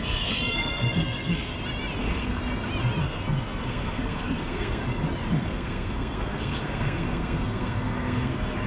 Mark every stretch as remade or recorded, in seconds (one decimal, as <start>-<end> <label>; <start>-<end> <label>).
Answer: 0.0-1.5 remade; 1.5-2.0 recorded; 2.0-2.4 remade; 2.4-3.0 recorded; 3.0-4.8 remade; 4.8-5.3 recorded; 5.3-8.7 remade